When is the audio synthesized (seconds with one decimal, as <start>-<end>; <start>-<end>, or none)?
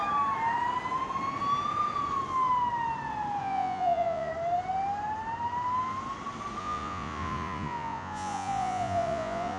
3.4-4.3; 6.6-9.6